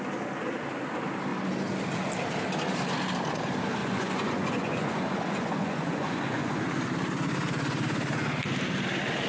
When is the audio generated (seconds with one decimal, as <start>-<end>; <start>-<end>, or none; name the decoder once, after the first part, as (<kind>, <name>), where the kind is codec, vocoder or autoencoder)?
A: 3.8-6.6 (vocoder, Vocos)